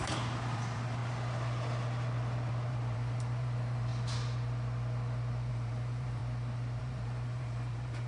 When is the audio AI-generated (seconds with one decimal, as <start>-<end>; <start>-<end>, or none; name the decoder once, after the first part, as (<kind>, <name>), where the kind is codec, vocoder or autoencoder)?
0.0-1.0 (vocoder, BigVGAN v2); 2.7-3.9; 5.5-6.2; 6.8-8.1